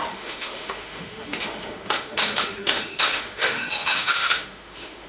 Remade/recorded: remade